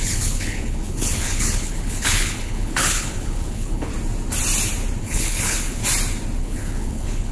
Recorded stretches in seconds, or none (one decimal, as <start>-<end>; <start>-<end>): 3.9-5.0; 5.8-6.4